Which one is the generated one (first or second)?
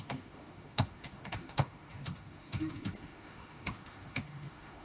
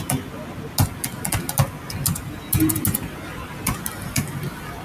first